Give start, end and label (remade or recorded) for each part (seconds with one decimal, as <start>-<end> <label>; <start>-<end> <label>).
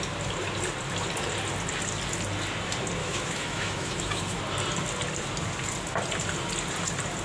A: 0.0-3.0 recorded; 3.0-4.4 remade; 4.4-7.2 recorded